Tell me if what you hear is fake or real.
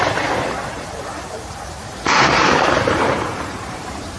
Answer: fake